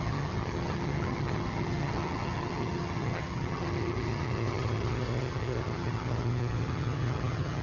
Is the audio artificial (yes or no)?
yes